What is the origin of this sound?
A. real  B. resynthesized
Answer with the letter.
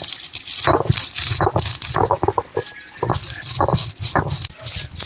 A